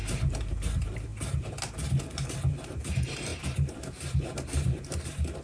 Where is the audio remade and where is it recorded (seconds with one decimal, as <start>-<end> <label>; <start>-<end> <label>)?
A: 0.0-1.1 remade; 1.1-2.0 recorded; 2.0-5.4 remade